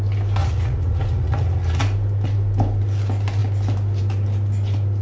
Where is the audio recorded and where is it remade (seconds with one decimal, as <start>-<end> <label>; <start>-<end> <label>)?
0.0-0.4 recorded; 0.4-1.8 remade; 1.8-5.0 recorded